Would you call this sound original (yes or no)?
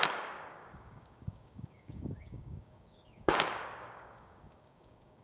no